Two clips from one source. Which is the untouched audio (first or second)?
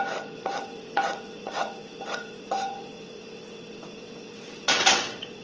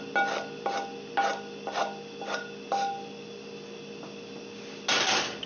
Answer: second